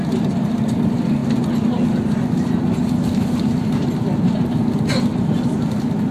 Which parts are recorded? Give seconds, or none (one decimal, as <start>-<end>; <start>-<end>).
0.0-6.1